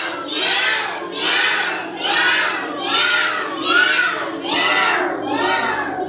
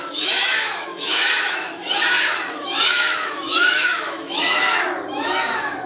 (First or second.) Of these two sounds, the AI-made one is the second